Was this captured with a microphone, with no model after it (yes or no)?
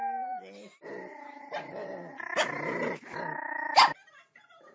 yes